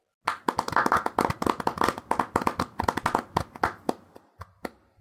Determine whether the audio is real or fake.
real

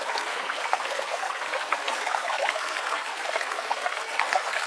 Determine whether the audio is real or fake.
fake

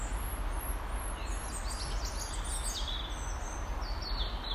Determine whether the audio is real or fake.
real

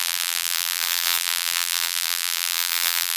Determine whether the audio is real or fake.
fake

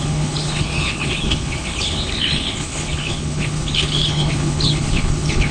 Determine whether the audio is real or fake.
fake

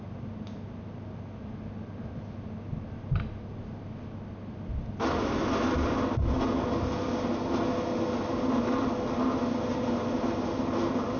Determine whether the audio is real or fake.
real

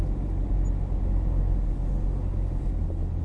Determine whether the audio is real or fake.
real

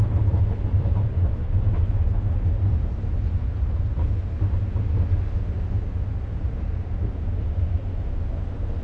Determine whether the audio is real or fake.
fake